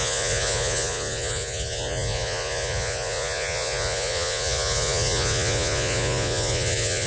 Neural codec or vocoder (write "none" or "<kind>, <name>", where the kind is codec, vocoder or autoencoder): vocoder, Vocos